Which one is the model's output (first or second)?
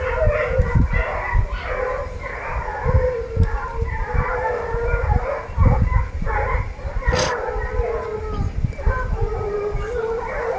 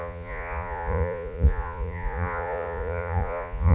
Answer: second